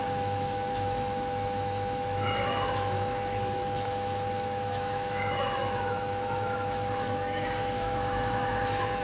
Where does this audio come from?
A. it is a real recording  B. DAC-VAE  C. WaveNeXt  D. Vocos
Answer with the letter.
B